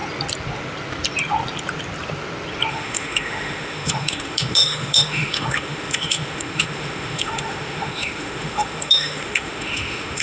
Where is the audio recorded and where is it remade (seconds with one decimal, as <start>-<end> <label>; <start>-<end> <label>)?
0.0-2.7 recorded; 2.7-10.2 remade